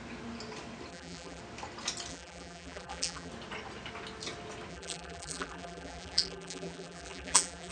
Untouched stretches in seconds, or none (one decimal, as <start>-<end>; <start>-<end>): 0.0-0.9; 1.4-2.1; 3.3-4.7